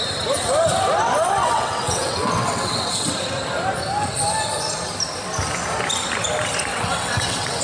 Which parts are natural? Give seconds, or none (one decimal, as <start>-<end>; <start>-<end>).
0.0-1.4; 3.1-6.7